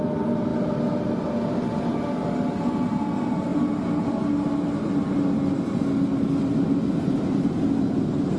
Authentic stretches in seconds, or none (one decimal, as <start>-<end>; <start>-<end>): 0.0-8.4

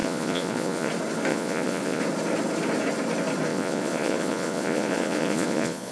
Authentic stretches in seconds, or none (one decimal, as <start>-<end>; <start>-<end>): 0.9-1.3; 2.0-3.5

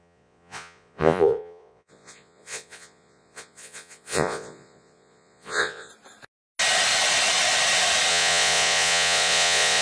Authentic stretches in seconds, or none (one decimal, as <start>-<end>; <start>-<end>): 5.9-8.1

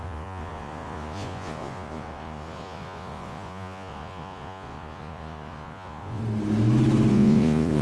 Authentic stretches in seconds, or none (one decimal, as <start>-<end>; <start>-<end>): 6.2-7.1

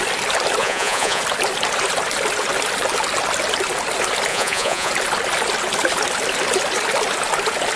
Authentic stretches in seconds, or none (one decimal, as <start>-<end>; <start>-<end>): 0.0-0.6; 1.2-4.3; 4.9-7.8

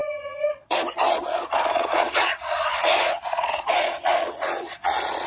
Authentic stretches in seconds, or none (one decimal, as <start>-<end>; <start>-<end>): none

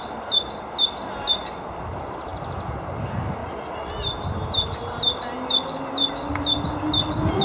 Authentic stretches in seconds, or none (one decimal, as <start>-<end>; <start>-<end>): 0.0-3.4; 3.9-7.4

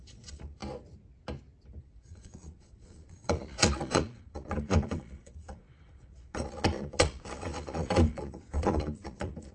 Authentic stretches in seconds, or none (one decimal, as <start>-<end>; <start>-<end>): 0.6-1.8